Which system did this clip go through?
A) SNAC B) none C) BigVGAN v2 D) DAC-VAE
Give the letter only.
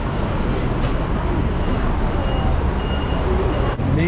B